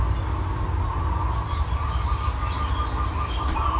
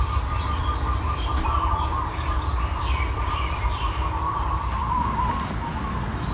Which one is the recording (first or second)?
first